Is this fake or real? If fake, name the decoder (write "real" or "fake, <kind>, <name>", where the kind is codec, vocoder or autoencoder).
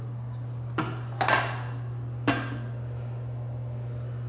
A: real